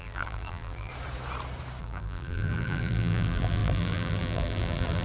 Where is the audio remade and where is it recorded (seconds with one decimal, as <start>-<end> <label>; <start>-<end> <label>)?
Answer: 0.0-0.9 remade; 0.9-1.8 recorded; 1.8-5.0 remade